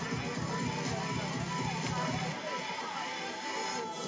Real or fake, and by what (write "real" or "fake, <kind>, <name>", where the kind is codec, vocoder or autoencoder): real